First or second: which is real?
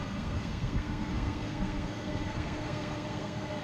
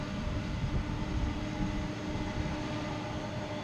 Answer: second